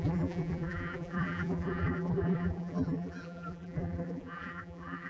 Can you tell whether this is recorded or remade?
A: remade